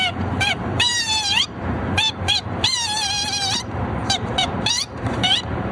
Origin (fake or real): fake